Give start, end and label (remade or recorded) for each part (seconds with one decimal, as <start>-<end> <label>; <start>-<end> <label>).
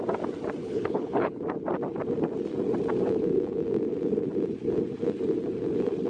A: 0.0-0.6 recorded; 0.6-1.4 remade; 1.4-6.1 recorded